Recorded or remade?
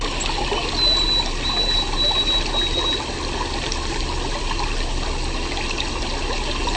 recorded